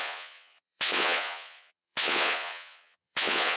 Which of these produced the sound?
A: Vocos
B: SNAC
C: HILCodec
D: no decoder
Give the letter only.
A